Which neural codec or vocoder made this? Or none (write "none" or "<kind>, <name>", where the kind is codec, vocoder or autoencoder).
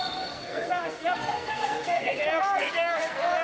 codec, SNAC